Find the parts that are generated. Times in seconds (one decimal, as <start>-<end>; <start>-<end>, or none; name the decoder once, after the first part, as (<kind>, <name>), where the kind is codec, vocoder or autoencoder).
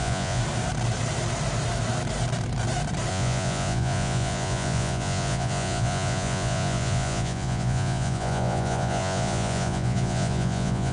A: 0.0-0.4 (vocoder, Vocos); 3.1-10.9